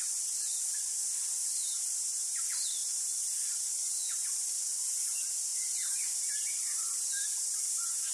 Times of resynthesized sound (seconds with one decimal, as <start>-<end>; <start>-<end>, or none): 1.6-2.4; 2.8-4.0; 5.5-8.1